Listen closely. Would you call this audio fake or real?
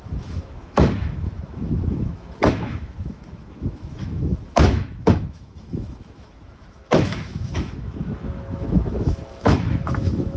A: fake